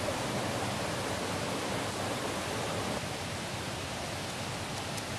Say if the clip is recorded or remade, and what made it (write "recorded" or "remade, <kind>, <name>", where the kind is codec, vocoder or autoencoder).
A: recorded